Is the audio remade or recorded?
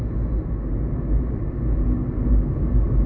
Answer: recorded